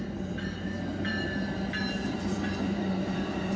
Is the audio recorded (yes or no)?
yes